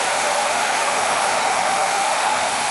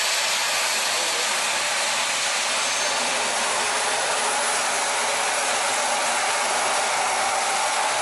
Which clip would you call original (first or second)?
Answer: second